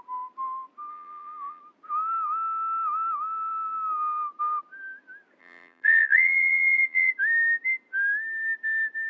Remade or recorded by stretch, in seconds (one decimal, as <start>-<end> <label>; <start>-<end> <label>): 0.0-0.9 recorded; 0.9-1.6 remade; 1.6-5.4 recorded; 5.4-7.1 remade; 7.1-9.1 recorded